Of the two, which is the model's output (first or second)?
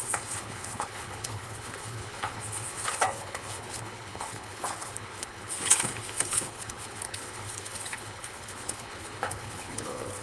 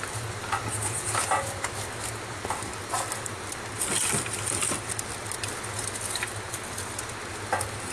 first